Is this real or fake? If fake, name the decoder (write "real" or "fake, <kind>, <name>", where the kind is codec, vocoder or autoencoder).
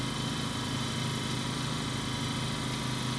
real